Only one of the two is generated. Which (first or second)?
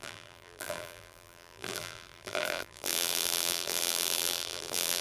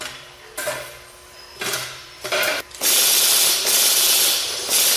first